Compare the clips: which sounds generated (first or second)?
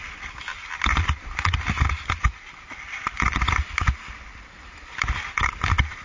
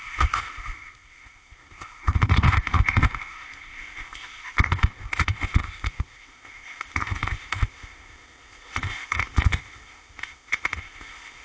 second